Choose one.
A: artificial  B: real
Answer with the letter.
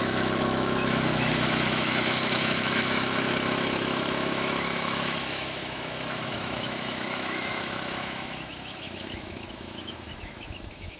A